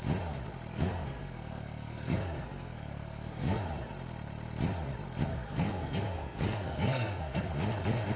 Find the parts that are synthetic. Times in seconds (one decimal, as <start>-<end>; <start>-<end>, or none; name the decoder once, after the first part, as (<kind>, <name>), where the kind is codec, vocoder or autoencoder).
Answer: 0.7-3.6 (codec, SNAC); 5.3-7.5